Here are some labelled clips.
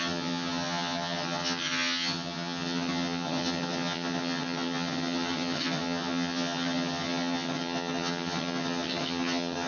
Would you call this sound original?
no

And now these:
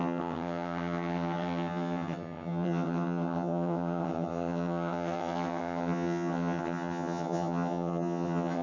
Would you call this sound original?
no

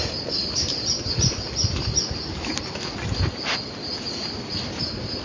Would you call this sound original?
yes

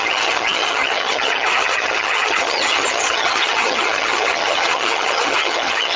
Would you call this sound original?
no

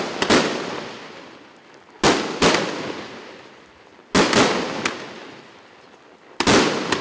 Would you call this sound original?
yes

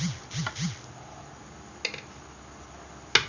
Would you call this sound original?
yes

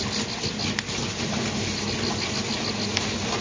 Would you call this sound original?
yes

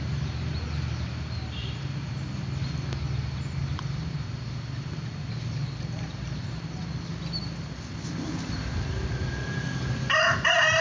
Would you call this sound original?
yes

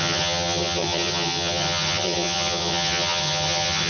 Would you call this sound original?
no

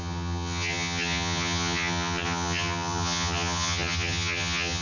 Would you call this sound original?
no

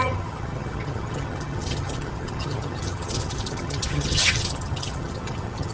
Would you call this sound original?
no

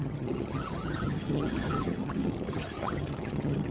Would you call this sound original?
no